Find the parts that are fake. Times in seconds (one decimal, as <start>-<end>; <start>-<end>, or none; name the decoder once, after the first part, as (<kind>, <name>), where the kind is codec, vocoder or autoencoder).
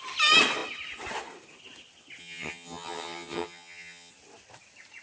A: 2.2-4.1 (vocoder, HiFi-GAN)